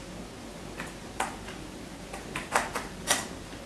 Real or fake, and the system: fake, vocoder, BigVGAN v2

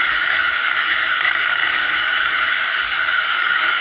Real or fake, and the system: fake, codec, DAC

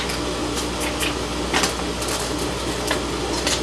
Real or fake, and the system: real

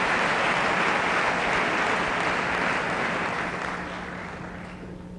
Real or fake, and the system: real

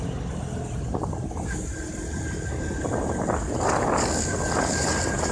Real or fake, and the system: real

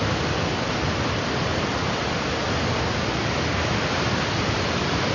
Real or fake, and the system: real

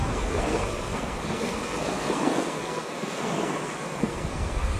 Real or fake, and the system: fake, codec, SNAC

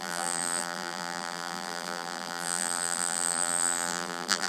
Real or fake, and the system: fake, vocoder, BigVGAN v2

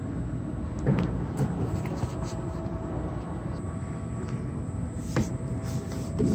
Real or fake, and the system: real